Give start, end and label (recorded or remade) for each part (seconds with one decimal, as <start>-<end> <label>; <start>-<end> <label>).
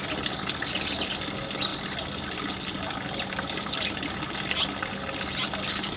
0.0-1.7 recorded; 1.7-4.5 remade; 4.5-6.0 recorded